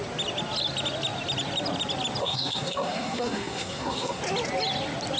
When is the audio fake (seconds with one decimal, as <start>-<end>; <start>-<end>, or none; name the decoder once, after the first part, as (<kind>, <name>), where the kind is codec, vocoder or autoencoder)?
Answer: 2.2-4.2 (codec, SNAC)